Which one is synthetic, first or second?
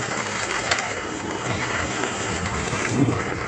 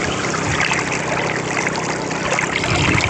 first